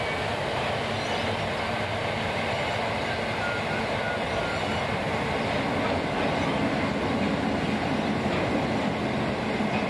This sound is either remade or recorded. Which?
recorded